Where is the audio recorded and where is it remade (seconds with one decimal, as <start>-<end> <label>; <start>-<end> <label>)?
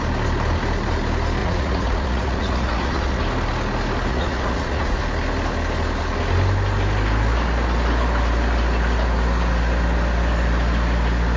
0.0-1.4 recorded; 1.4-3.2 remade; 3.2-4.1 recorded; 4.1-5.0 remade; 5.0-11.4 recorded